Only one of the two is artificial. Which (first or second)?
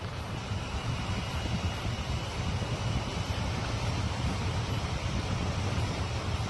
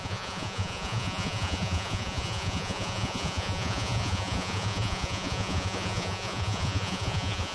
second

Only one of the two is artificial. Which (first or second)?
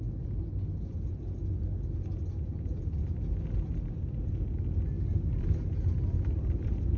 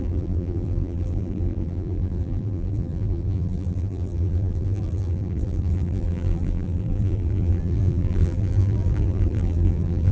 second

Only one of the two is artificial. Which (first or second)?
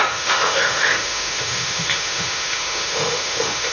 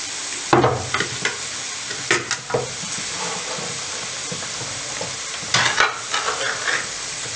first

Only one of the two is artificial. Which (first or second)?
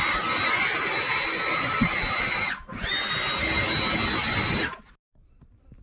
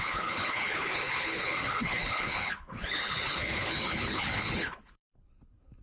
second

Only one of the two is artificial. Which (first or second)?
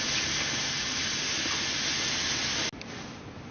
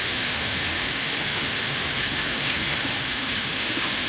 second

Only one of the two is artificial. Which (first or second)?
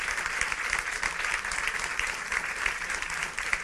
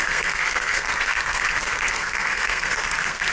second